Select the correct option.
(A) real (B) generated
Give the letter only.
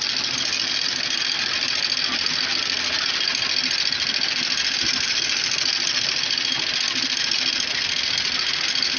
A